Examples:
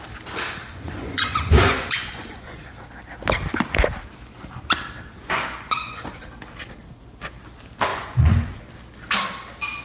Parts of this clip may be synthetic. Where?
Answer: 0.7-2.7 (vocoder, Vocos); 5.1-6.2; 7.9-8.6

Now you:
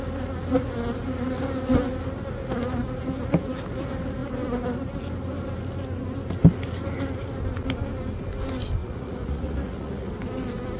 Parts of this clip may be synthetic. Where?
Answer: 8.8-10.1 (vocoder, Vocos)

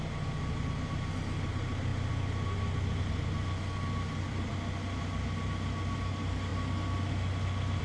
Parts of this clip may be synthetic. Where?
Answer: none

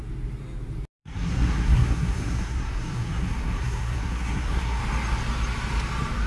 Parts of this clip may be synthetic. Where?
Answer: 1.0-4.8 (codec, SNAC)

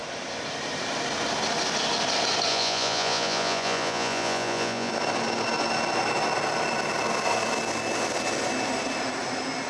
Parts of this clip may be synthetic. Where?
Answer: 2.5-4.9 (vocoder, Vocos)

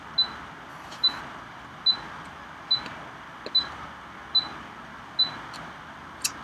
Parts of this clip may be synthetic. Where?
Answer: 0.7-1.2 (autoencoder, DAC-VAE)

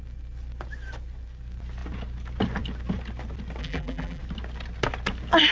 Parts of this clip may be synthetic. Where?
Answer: 3.6-4.2 (vocoder, BigVGAN v2)